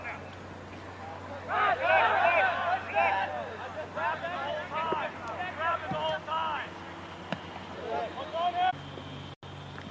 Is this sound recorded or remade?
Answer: recorded